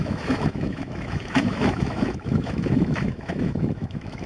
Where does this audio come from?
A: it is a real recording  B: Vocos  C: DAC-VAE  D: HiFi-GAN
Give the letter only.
C